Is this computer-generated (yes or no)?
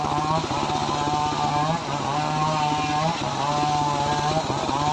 no